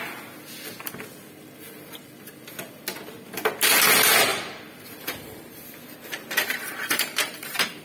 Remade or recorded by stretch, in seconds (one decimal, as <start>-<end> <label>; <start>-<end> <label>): 0.0-4.3 recorded; 4.3-7.8 remade